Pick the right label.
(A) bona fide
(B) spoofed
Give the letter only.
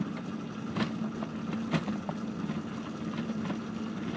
B